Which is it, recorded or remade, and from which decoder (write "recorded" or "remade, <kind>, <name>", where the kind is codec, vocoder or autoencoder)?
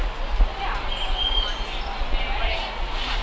recorded